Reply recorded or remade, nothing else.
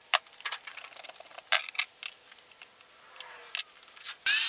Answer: recorded